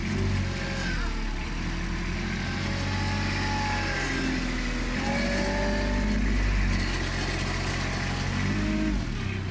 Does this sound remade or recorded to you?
recorded